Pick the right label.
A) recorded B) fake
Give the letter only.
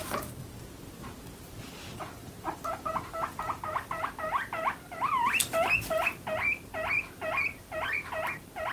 A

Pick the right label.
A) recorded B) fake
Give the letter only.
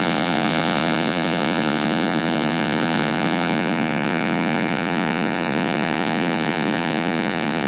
B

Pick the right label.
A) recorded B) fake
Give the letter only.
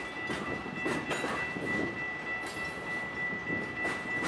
A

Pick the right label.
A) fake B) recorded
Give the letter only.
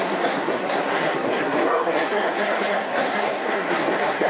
A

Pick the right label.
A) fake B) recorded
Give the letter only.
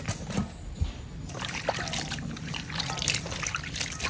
B